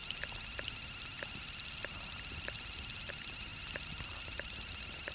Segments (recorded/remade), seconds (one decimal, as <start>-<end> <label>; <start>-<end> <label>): 0.0-3.1 recorded; 3.1-3.5 remade; 3.5-4.2 recorded; 4.2-5.1 remade